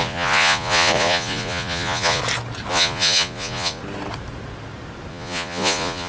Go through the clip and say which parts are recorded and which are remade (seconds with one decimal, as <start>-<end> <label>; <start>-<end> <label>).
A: 0.0-2.2 remade; 2.2-2.7 recorded; 2.7-3.8 remade; 3.8-5.1 recorded; 5.1-6.1 remade